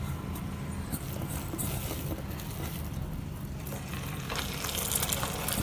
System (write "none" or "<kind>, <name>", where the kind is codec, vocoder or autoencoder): none